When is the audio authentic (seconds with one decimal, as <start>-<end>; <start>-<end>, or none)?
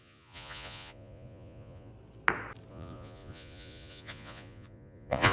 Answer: 1.9-2.7